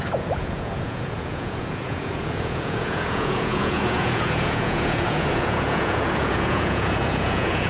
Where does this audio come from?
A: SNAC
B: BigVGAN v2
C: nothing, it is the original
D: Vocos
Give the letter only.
D